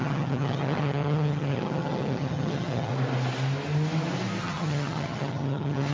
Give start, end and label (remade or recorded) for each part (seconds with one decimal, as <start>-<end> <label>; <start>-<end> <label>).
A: 0.0-2.9 remade; 2.9-4.4 recorded; 4.4-5.9 remade